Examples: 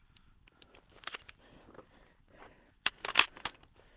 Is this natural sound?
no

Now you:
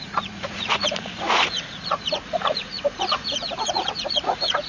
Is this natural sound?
no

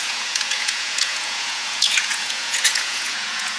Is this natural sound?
no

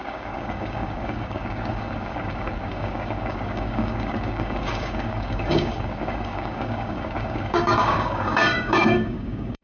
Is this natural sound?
no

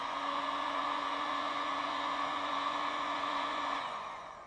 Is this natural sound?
no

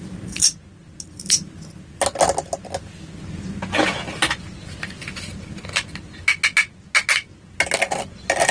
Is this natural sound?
yes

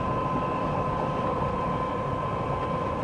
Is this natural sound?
yes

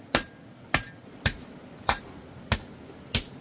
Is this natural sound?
yes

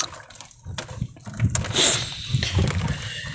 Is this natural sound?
yes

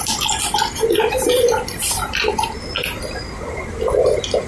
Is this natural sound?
no